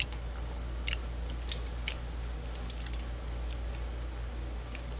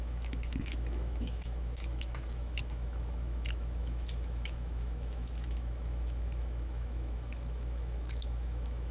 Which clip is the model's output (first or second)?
second